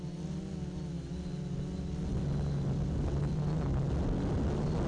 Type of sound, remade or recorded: recorded